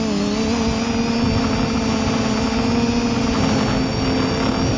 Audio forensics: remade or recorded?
recorded